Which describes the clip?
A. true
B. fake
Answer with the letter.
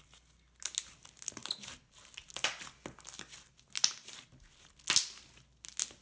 A